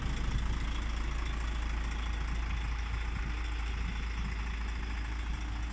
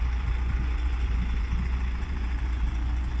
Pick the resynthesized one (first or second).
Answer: second